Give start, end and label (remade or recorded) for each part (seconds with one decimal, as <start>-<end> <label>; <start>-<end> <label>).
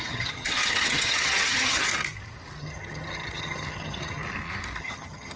0.0-1.9 remade; 1.9-2.6 recorded; 2.6-4.2 remade; 4.2-4.8 recorded; 4.8-5.4 remade